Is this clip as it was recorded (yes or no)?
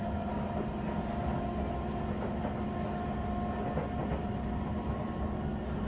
yes